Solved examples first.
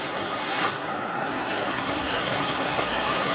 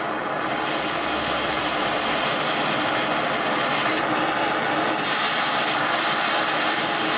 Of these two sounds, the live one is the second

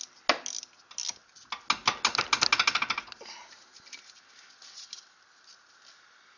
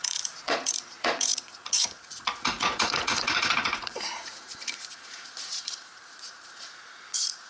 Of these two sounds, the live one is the first